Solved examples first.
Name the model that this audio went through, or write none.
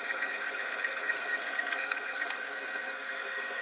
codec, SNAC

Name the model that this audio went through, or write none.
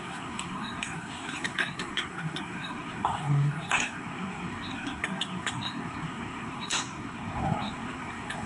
codec, SNAC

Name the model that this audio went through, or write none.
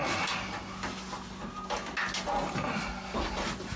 none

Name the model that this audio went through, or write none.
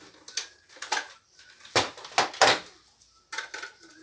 none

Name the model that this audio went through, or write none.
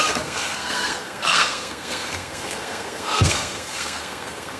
codec, SNAC